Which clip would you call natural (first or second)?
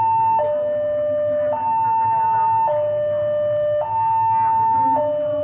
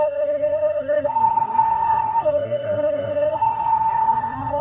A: first